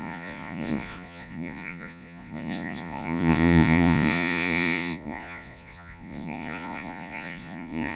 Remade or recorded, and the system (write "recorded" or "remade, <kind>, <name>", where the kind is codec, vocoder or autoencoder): remade, vocoder, Vocos